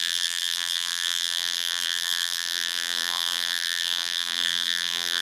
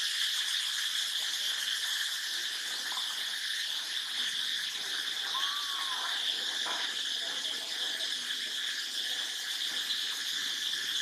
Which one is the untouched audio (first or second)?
second